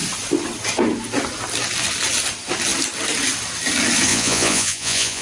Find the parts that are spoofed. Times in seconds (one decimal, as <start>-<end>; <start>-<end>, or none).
4.1-5.2